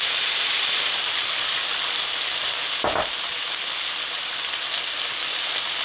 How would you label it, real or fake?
real